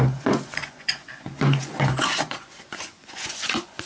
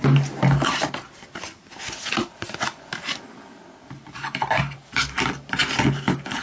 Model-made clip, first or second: first